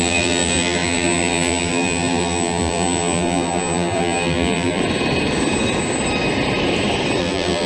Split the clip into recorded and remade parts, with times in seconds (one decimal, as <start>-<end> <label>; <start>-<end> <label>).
0.0-4.8 remade; 4.8-7.2 recorded; 7.2-7.7 remade